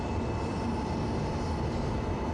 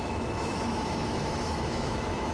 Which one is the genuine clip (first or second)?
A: first